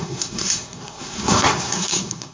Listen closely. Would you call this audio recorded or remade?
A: remade